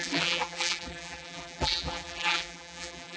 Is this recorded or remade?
remade